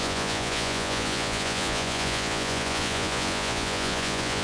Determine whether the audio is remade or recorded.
remade